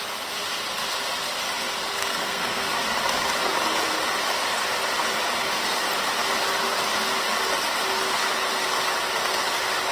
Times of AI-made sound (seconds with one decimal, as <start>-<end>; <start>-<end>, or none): 1.9-2.7